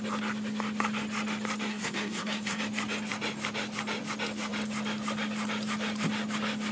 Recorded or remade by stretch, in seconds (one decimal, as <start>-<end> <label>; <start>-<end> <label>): 0.0-1.7 recorded; 1.7-2.6 remade; 2.6-6.7 recorded

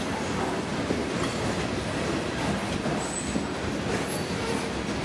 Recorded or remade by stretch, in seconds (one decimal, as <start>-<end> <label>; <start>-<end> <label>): 0.0-5.0 recorded

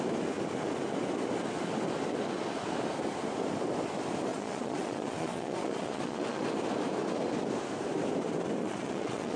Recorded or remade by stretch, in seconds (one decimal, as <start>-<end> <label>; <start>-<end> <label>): 0.0-4.3 recorded; 4.3-6.4 remade; 6.4-8.6 recorded; 8.6-9.4 remade

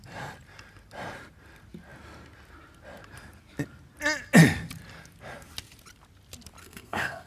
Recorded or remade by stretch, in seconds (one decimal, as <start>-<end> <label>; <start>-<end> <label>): 0.0-6.6 recorded; 6.6-7.3 remade

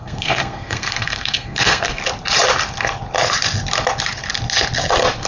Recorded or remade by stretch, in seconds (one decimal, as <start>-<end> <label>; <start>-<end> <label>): 0.0-2.0 remade; 2.0-5.3 recorded

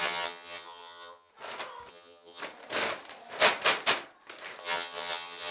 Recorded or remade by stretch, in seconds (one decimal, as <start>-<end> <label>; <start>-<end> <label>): 0.0-1.3 remade; 1.3-1.9 recorded; 1.9-2.4 remade; 2.4-4.6 recorded; 4.6-5.5 remade

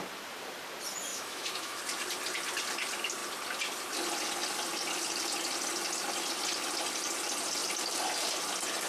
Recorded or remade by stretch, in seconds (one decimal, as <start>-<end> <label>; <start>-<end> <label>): 0.0-1.1 recorded; 1.1-1.8 remade; 1.8-8.9 recorded

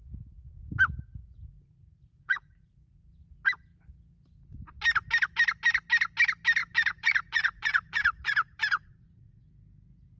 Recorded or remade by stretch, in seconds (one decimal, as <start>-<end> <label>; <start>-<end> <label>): 0.0-1.2 recorded; 1.2-3.0 remade; 3.0-6.6 recorded; 6.6-9.4 remade; 9.4-10.2 recorded